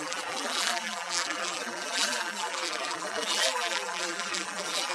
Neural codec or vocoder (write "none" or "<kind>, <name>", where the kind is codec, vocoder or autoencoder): vocoder, BigVGAN v2